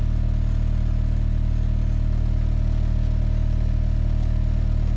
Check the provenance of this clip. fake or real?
real